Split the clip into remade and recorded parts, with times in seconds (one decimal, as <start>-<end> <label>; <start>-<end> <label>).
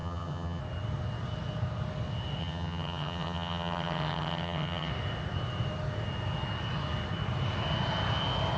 0.0-0.6 remade; 0.6-2.4 recorded; 2.4-4.9 remade; 4.9-8.6 recorded